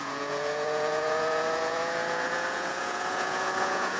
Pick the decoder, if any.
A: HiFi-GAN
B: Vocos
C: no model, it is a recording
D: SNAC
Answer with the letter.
B